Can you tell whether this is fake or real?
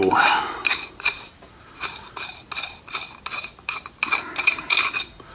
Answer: real